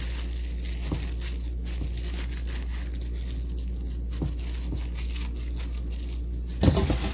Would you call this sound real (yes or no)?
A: yes